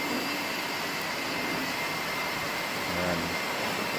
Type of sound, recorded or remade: recorded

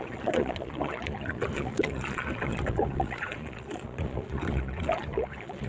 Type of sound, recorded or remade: remade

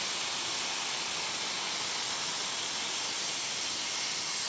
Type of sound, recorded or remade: recorded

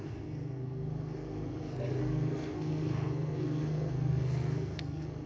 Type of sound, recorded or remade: remade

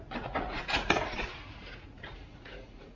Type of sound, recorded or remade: remade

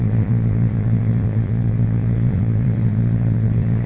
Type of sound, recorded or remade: remade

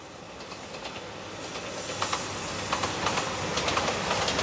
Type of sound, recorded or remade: recorded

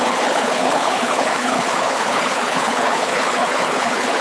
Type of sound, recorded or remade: remade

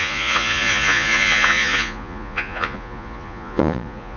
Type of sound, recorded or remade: remade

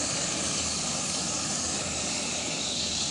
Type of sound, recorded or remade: remade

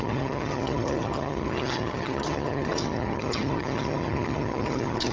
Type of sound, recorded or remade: remade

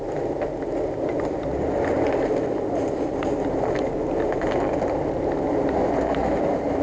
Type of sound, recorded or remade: recorded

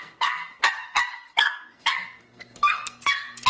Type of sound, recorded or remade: remade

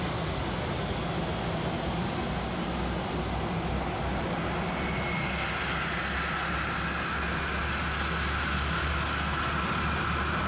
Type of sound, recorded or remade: recorded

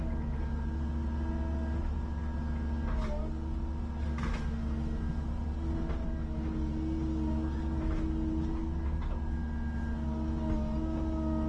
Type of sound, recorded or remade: recorded